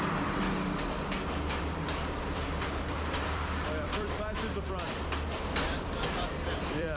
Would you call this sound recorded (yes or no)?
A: no